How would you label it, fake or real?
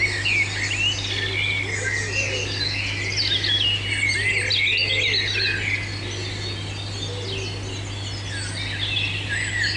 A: real